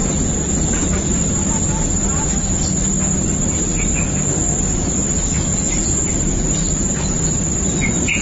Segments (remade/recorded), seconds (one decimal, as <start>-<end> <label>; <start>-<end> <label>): 0.0-8.2 recorded